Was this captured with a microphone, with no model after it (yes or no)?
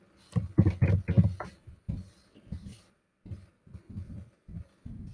yes